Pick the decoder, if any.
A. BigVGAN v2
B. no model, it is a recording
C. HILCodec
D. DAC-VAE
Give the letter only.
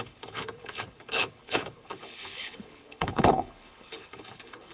C